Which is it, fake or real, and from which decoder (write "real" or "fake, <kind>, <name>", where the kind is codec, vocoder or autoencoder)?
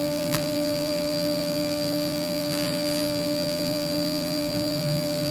fake, vocoder, BigVGAN v2